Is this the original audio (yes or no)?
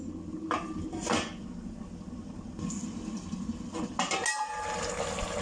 yes